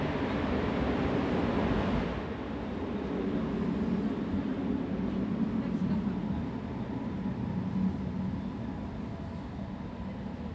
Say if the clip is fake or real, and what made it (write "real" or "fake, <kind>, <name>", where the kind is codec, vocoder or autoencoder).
real